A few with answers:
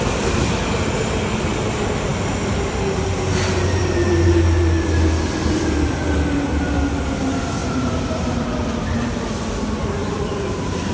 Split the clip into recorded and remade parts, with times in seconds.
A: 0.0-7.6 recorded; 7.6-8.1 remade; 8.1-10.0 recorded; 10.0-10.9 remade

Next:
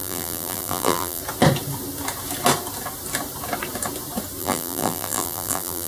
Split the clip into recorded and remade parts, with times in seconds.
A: 0.0-1.2 remade; 1.2-4.4 recorded; 4.4-5.9 remade